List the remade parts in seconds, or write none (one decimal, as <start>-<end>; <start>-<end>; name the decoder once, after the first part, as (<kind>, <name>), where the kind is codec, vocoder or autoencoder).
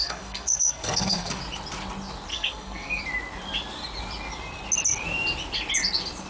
0.0-1.4 (codec, SNAC); 2.3-3.0